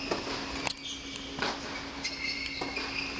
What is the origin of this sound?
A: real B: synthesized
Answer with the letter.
A